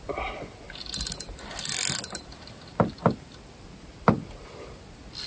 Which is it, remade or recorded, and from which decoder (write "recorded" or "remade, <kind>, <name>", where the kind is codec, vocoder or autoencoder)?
recorded